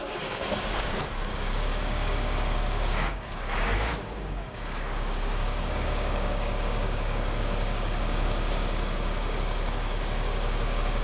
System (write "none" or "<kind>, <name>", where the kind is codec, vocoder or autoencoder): codec, DAC